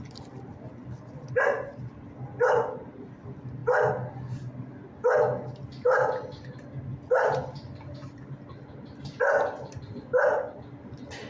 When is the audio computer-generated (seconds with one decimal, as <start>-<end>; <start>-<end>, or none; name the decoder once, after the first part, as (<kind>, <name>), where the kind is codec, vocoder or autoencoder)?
none